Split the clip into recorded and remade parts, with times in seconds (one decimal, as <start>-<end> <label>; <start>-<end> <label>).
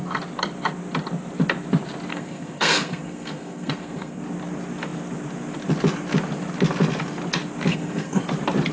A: 0.0-2.1 recorded; 2.1-4.2 remade; 4.2-7.7 recorded; 7.7-8.2 remade; 8.2-8.7 recorded